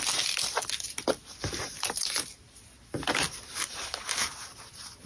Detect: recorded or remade recorded